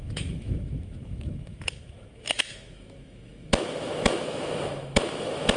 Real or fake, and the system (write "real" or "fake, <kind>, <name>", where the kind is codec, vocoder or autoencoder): fake, autoencoder, DAC-VAE